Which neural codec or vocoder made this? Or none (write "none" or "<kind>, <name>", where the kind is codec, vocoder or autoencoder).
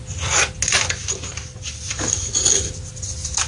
none